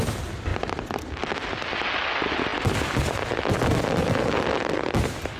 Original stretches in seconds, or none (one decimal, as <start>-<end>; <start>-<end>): 0.0-5.4